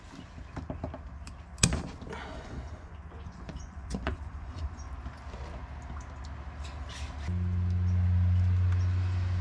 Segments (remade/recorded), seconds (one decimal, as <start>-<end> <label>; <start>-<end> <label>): 0.0-2.3 recorded; 2.3-4.9 remade; 4.9-9.4 recorded